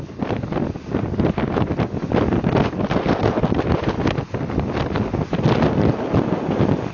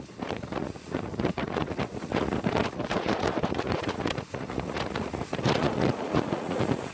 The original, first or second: first